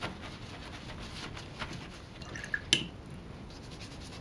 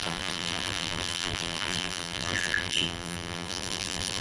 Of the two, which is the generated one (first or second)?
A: second